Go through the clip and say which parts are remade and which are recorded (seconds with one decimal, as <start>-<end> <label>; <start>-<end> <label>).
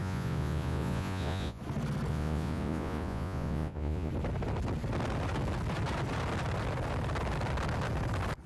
0.0-1.6 remade; 1.6-2.1 recorded; 2.1-4.1 remade; 4.1-8.5 recorded